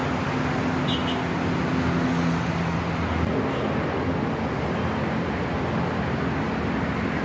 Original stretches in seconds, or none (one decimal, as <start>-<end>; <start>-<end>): 0.0-7.2

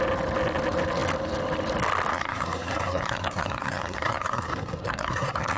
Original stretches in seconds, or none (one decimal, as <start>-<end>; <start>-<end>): 0.0-2.1

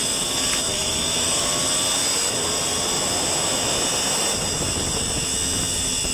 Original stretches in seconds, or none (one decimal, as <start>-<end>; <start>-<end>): 0.0-0.7; 1.6-6.1

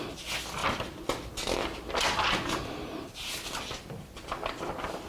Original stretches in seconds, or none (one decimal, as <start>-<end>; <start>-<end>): 0.6-3.6

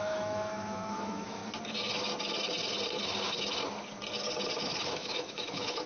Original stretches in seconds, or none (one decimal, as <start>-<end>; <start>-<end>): 1.4-4.9

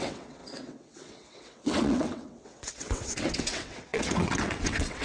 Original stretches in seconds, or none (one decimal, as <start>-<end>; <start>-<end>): none